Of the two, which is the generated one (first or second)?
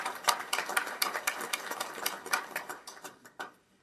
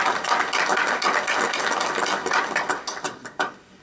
first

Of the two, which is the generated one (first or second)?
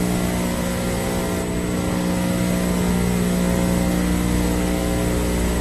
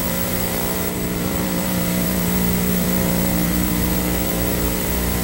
second